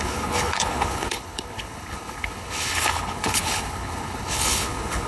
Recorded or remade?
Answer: remade